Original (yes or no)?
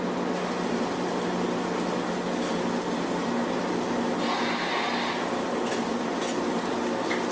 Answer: yes